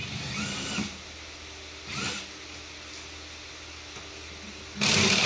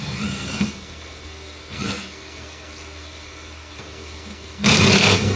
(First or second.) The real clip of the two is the first